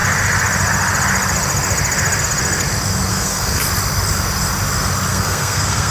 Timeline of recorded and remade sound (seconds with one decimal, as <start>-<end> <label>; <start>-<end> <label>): 0.0-3.1 recorded; 3.1-3.6 remade; 3.6-5.1 recorded; 5.1-5.9 remade